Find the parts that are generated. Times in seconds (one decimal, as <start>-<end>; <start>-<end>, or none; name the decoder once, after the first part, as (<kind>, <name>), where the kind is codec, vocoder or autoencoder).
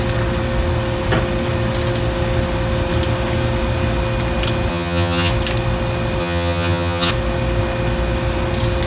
4.7-5.3 (vocoder, HiFi-GAN); 6.2-7.1